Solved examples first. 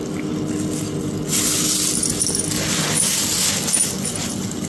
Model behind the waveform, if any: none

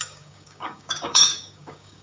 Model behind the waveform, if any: codec, DAC